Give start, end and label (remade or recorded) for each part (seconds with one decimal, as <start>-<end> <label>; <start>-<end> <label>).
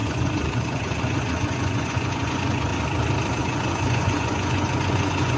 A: 0.0-2.7 remade; 2.7-3.4 recorded; 3.4-5.4 remade